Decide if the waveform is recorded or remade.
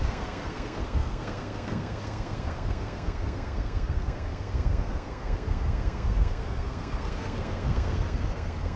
remade